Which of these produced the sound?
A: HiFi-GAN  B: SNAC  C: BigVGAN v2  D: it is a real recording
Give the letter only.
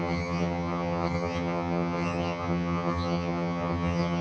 A